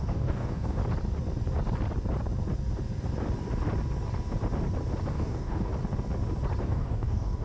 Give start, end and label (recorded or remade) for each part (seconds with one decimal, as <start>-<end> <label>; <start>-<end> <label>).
0.0-0.8 remade; 0.8-5.1 recorded; 5.1-5.7 remade; 5.7-6.6 recorded; 6.6-7.4 remade